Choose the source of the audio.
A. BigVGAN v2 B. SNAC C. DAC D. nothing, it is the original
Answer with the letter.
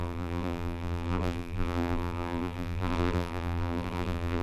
A